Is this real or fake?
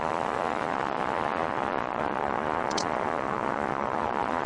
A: fake